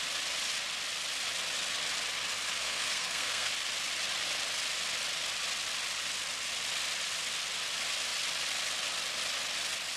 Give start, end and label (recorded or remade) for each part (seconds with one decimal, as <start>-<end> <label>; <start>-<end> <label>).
0.0-2.6 recorded; 2.6-3.5 remade; 3.5-10.0 recorded